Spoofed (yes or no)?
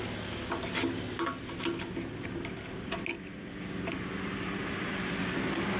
no